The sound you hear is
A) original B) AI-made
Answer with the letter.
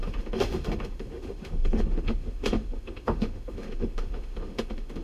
B